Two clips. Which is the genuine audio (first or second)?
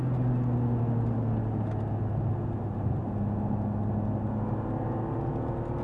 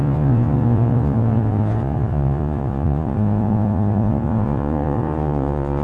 first